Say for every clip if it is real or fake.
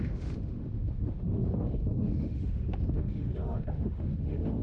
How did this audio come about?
fake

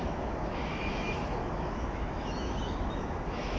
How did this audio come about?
fake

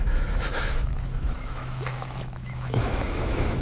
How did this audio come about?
fake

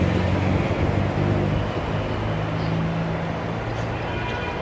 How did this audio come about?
real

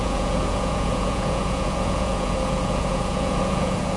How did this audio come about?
fake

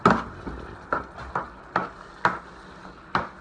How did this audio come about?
real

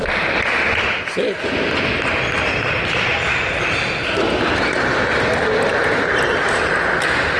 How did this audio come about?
fake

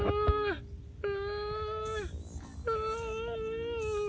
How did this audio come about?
real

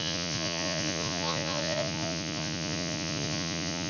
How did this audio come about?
fake